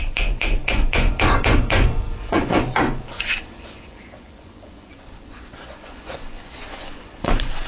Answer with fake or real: fake